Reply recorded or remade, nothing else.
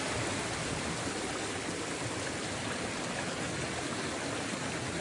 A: recorded